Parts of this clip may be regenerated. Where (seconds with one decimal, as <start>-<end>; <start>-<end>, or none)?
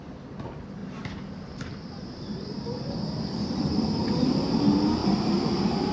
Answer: 0.8-4.3; 5.0-5.9